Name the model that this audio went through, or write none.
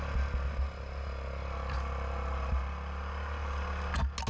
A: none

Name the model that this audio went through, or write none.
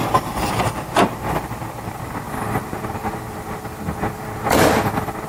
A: vocoder, BigVGAN v2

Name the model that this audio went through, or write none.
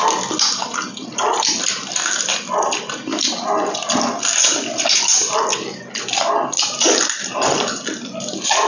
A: none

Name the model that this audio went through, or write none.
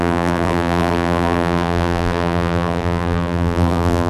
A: vocoder, BigVGAN v2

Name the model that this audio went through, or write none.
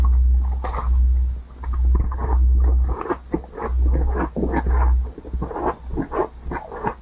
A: none